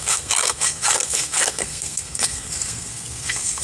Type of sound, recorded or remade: remade